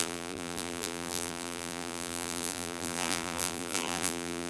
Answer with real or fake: fake